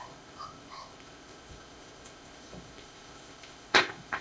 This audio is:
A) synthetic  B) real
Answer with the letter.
A